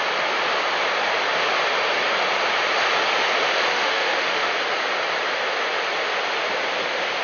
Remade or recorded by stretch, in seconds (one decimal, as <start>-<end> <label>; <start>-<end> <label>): 0.0-3.7 recorded; 3.7-4.5 remade; 4.5-7.2 recorded